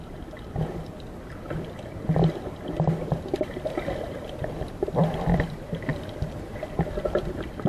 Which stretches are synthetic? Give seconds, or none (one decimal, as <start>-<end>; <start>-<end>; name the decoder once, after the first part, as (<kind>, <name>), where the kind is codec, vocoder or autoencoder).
5.9-6.8 (vocoder, BigVGAN v2)